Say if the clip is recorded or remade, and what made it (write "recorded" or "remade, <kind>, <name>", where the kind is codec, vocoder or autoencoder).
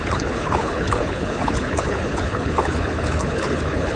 remade, codec, HILCodec